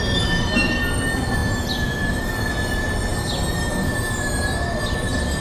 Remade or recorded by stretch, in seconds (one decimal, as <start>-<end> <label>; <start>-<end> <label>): 0.0-5.4 recorded